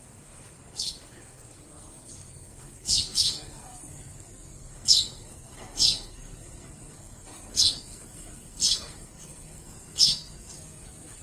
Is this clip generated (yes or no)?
yes